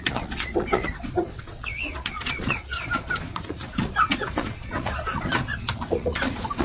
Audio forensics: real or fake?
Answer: fake